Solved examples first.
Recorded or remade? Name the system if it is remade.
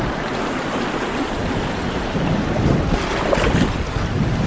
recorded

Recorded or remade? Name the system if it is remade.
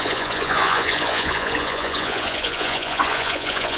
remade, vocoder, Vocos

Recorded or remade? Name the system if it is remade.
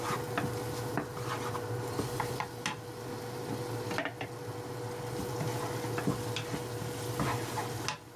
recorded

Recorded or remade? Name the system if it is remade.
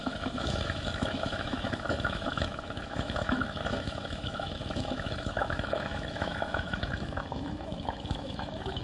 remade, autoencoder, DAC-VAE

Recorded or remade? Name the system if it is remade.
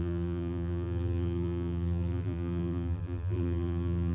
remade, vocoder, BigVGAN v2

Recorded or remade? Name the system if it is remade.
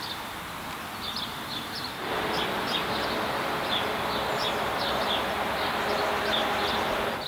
recorded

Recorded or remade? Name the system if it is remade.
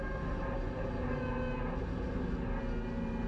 recorded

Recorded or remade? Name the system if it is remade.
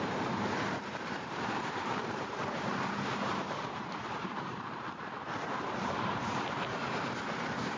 remade, vocoder, BigVGAN v2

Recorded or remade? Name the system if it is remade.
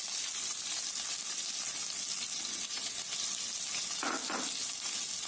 recorded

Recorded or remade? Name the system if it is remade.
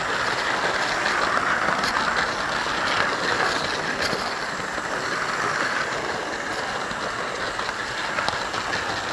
recorded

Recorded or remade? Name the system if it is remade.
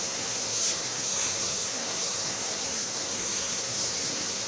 remade, codec, SNAC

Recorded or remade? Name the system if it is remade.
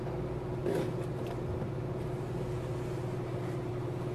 recorded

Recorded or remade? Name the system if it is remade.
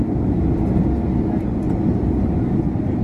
recorded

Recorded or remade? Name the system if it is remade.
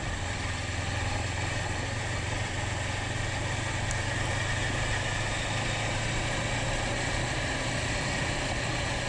recorded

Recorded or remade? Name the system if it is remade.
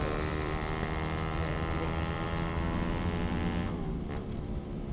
remade, vocoder, BigVGAN v2